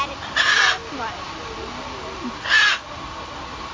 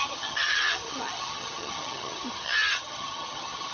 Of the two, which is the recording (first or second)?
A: first